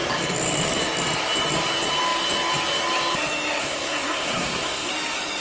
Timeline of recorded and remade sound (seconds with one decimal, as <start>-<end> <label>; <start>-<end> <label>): 0.0-3.6 recorded; 3.6-4.9 remade; 4.9-5.4 recorded